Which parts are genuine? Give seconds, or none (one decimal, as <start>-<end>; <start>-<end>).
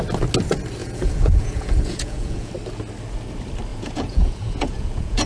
0.0-0.8; 2.5-3.7